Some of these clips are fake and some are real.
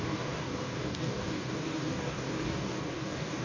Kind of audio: fake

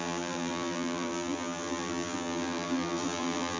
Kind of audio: fake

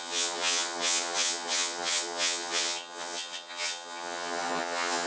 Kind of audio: fake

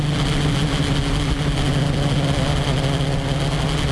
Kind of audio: real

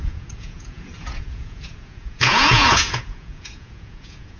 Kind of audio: fake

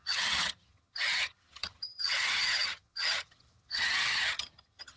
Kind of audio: fake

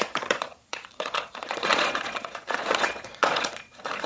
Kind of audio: fake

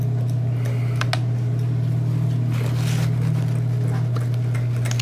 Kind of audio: real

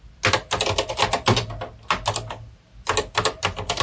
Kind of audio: real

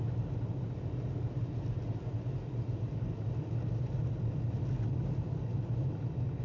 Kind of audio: real